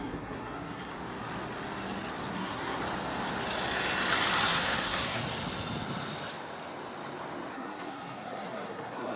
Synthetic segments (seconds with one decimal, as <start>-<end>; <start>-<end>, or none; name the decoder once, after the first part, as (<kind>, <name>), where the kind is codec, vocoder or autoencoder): 0.0-0.9 (codec, SNAC); 2.3-2.8; 4.5-5.2; 7.5-9.2